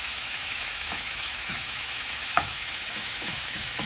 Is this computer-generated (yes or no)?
yes